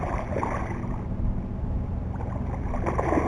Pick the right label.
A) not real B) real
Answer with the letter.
B